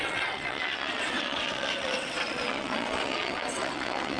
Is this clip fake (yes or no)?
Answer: yes